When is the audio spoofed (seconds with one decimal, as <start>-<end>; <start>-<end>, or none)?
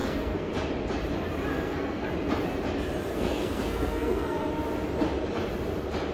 0.0-0.5; 1.5-2.1; 3.1-4.5